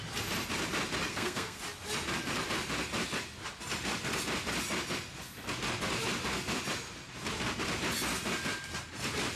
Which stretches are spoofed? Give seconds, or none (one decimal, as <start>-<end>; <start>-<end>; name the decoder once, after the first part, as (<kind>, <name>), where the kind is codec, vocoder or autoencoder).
1.1-1.6 (codec, SNAC)